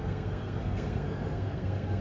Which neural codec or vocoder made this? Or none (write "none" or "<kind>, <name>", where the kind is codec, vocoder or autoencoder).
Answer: codec, SNAC